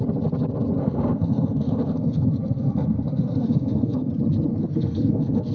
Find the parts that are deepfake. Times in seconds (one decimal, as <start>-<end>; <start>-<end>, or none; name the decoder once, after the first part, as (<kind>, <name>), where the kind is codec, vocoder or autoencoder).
0.8-4.1 (codec, SNAC); 4.5-5.5